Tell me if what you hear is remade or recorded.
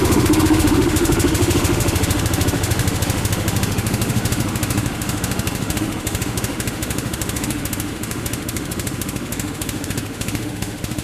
remade